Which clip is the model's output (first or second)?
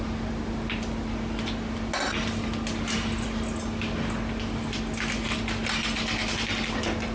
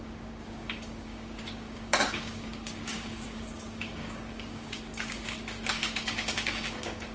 second